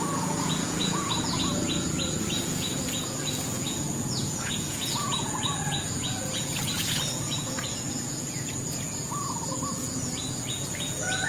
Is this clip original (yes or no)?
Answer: no